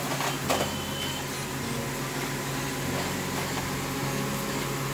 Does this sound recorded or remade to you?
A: recorded